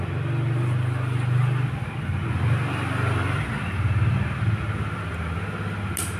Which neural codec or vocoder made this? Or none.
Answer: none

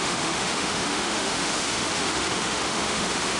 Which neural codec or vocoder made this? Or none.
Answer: autoencoder, DAC-VAE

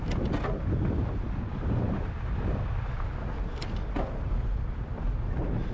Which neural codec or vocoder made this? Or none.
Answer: none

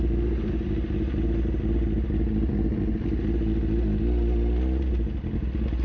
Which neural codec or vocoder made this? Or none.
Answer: none